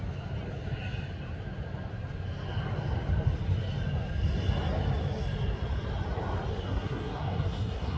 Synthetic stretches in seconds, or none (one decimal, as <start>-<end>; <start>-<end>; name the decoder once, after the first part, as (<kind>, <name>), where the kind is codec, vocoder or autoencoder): 6.5-8.0 (codec, SNAC)